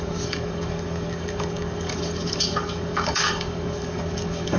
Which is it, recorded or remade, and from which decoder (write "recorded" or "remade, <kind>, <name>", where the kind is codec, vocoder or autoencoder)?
remade, codec, DAC